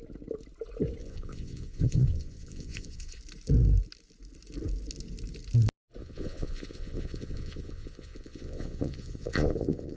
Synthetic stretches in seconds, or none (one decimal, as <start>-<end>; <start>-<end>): 1.0-3.2; 6.0-10.0